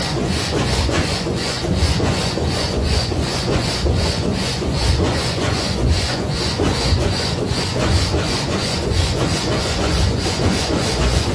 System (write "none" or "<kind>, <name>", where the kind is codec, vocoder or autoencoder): vocoder, Vocos